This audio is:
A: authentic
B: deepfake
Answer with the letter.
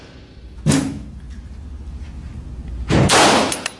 A